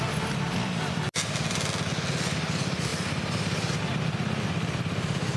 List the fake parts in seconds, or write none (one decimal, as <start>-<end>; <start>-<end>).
2.9-3.8